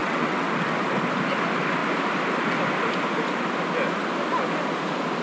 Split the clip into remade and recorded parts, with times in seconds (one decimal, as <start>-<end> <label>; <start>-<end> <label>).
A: 0.0-0.5 remade; 0.5-5.2 recorded